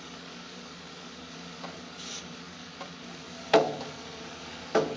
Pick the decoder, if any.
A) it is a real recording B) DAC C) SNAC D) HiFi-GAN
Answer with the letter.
B